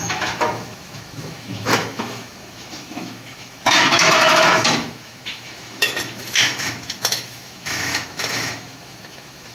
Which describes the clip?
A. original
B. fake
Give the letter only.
B